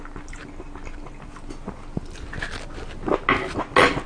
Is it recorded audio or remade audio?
recorded